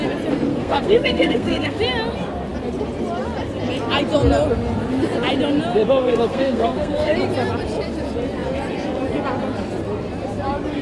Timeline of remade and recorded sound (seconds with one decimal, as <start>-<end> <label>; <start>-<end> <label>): 0.0-0.5 recorded; 0.5-1.8 remade; 1.8-6.0 recorded; 6.0-7.1 remade; 7.1-10.8 recorded